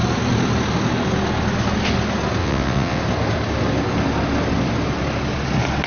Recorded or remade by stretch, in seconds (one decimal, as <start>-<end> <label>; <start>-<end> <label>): 0.0-2.4 recorded; 2.4-3.0 remade; 3.0-5.9 recorded